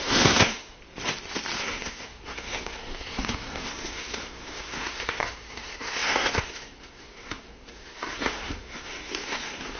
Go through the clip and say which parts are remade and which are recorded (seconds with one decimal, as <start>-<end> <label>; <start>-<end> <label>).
0.0-0.8 remade; 0.8-1.6 recorded; 1.6-9.8 remade

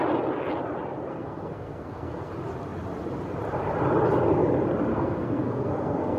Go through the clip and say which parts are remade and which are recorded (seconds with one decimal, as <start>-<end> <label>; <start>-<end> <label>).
0.0-1.1 recorded; 1.1-2.3 remade; 2.3-4.9 recorded; 4.9-6.2 remade

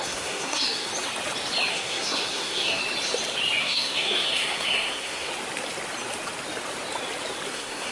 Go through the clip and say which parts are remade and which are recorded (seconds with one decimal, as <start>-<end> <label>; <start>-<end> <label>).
0.0-0.9 remade; 0.9-1.7 recorded; 1.7-2.8 remade; 2.8-3.6 recorded; 3.6-5.3 remade; 5.3-7.5 recorded; 7.5-7.9 remade